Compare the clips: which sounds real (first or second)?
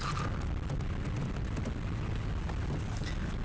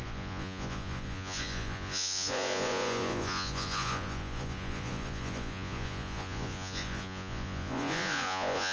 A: first